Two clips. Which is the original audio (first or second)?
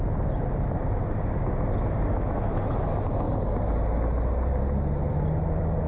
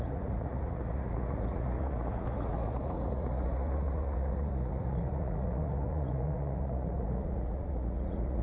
first